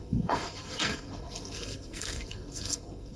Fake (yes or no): yes